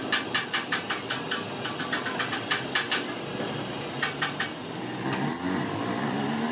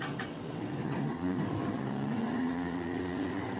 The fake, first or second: second